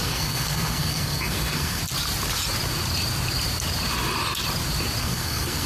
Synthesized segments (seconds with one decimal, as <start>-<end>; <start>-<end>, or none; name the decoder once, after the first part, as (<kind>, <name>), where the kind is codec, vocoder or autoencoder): 0.0-1.8 (codec, SNAC); 5.0-5.7